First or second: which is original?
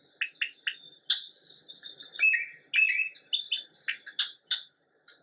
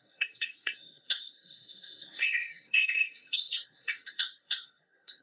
first